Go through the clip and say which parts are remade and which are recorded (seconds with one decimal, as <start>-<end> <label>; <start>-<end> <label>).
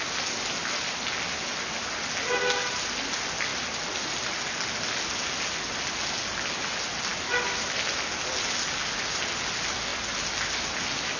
0.0-11.2 recorded